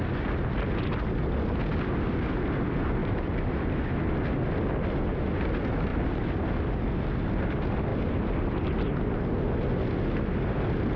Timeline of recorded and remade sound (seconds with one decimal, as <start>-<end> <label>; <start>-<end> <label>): 0.0-3.0 recorded; 3.0-3.6 remade; 3.6-5.9 recorded; 5.9-6.4 remade; 6.4-11.0 recorded